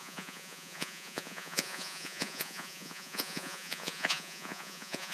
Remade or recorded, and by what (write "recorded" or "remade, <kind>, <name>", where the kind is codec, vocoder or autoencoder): remade, vocoder, Vocos